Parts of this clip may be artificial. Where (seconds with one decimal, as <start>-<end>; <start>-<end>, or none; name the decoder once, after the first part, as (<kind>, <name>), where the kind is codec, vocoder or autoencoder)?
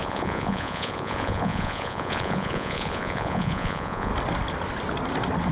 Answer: 0.0-4.1 (vocoder, Vocos)